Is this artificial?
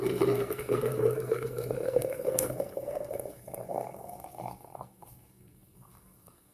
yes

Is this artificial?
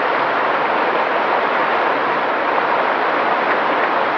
no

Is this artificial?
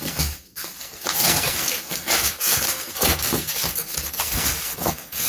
yes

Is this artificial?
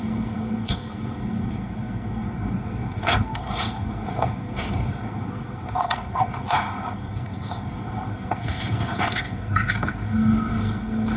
yes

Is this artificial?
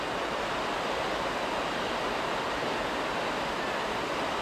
no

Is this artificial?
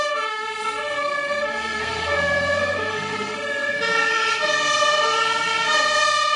yes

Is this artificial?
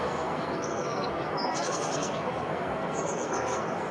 yes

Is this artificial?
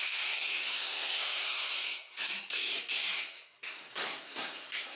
yes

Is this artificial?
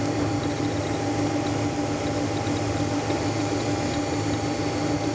no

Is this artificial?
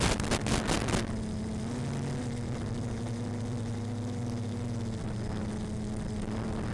no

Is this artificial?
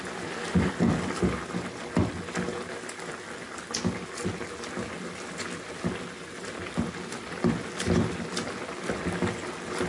no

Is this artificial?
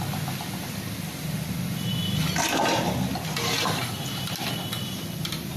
no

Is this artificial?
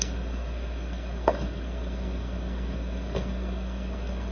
yes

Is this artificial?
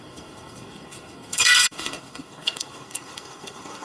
yes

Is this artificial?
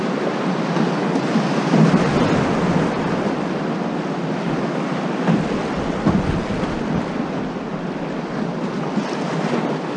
no